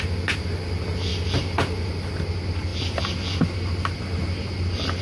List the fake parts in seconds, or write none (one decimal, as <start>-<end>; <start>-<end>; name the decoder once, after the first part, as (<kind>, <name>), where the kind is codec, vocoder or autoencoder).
none

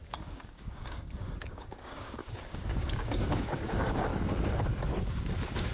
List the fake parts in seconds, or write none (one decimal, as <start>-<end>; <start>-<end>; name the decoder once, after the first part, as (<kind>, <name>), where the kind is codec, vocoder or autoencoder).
0.0-4.1 (codec, DAC); 5.0-5.7